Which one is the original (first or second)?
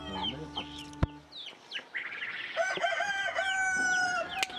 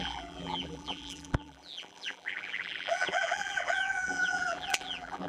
first